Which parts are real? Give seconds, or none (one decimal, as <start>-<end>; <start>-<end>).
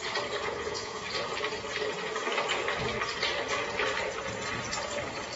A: 0.0-0.4; 1.0-5.4